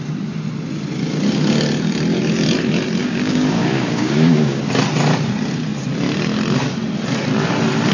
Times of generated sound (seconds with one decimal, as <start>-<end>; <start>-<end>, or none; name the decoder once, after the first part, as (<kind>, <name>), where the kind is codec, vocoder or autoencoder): 3.0-4.6 (codec, DAC)